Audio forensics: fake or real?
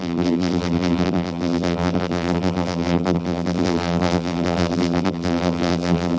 fake